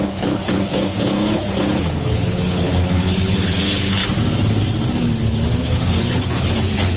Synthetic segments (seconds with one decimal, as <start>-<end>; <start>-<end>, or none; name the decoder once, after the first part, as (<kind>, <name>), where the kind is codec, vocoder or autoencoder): 0.0-4.0 (codec, HILCodec); 5.6-7.0